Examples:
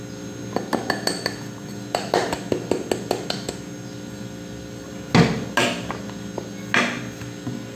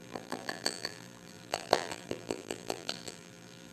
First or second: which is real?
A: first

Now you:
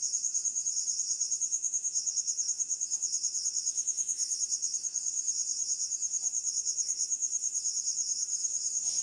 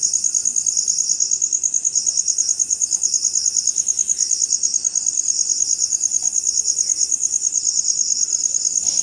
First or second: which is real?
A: second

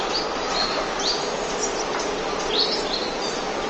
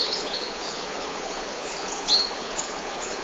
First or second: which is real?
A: first